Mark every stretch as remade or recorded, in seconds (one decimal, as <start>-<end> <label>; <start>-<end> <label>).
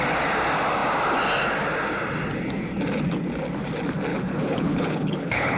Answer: 0.0-4.1 recorded; 4.1-5.6 remade